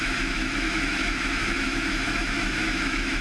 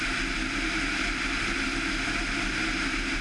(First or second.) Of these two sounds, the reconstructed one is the first